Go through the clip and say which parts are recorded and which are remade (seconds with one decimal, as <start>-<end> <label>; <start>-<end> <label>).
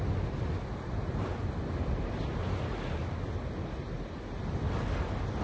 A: 0.0-5.4 recorded